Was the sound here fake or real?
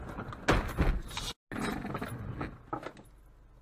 real